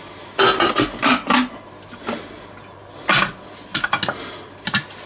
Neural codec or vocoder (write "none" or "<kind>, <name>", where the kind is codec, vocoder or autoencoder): none